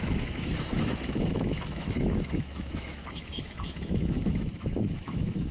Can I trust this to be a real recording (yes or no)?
no